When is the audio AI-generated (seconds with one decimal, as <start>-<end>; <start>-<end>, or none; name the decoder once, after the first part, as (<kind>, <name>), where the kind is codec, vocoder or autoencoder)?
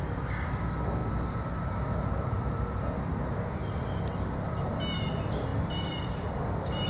5.5-6.9 (vocoder, BigVGAN v2)